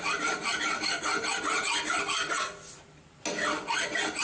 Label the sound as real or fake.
real